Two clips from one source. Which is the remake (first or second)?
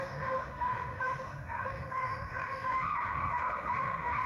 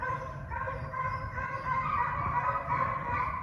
first